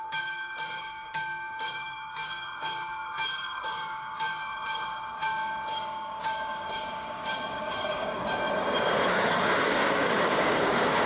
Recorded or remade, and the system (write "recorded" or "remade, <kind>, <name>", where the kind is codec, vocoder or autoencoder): remade, codec, DAC